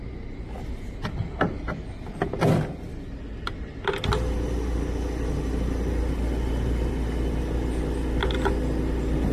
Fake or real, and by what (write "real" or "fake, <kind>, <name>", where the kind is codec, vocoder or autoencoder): real